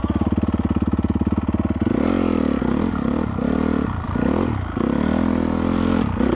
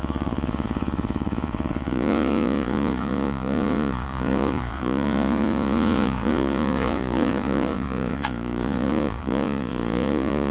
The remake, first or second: second